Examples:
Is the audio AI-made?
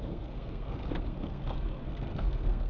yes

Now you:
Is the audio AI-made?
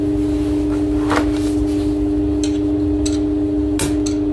no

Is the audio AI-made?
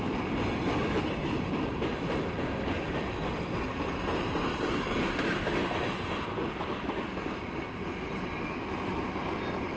no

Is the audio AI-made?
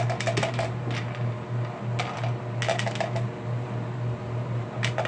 no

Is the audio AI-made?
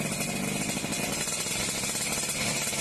no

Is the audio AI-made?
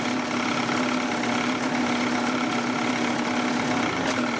no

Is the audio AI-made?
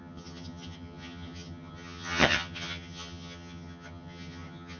yes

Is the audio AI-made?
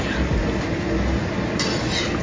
no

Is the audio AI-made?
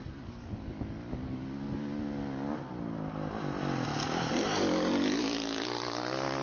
no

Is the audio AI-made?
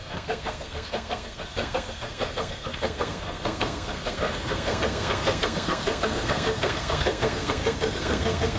yes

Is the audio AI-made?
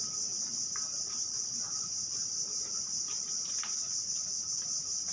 no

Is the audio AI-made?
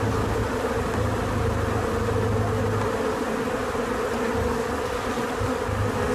no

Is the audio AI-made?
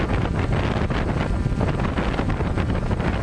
no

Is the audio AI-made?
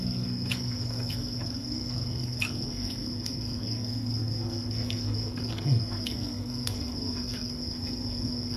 yes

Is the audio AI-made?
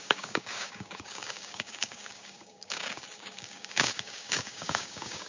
yes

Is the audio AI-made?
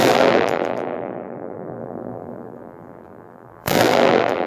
yes